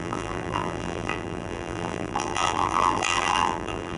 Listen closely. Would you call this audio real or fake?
fake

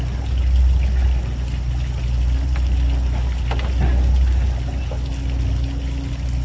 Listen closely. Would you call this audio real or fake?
real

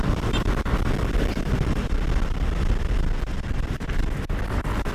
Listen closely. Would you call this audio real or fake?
real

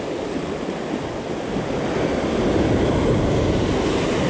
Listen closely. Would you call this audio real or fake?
real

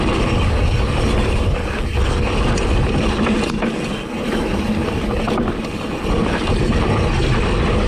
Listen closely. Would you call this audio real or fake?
real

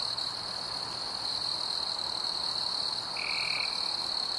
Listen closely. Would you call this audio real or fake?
real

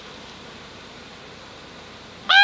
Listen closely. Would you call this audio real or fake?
real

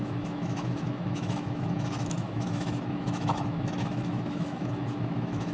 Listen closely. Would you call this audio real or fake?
fake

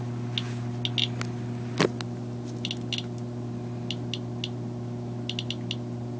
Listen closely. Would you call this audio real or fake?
real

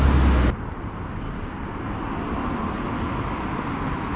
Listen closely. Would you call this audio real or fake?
real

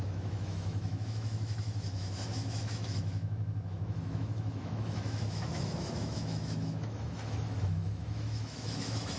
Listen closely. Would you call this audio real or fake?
fake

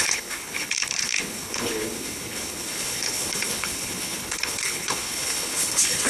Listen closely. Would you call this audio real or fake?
fake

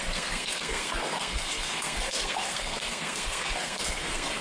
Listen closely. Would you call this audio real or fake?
fake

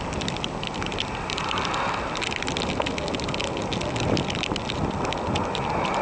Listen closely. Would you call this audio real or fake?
real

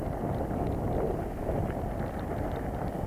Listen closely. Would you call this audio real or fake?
real